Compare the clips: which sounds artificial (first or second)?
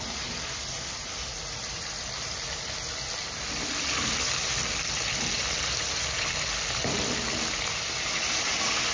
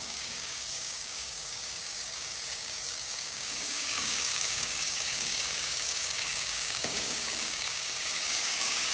second